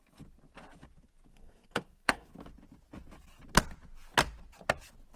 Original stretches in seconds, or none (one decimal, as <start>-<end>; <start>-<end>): 0.0-1.3; 2.3-5.2